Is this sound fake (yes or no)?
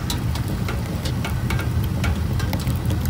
no